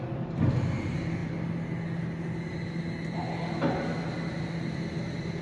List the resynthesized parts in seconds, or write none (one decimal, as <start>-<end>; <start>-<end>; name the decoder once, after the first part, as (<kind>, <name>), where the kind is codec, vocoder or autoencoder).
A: none